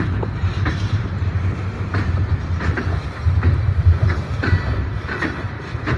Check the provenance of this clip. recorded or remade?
remade